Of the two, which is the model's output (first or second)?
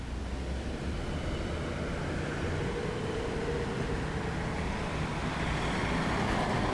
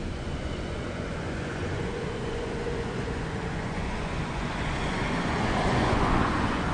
second